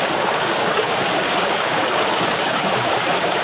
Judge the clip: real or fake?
fake